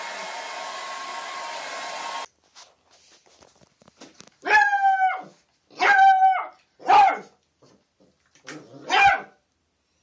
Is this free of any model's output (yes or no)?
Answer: yes